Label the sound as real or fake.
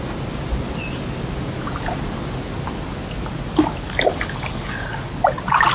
real